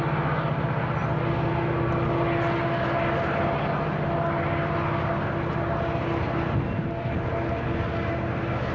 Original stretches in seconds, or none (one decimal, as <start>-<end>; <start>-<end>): 0.0-8.7